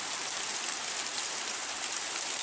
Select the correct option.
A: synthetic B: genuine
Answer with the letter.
A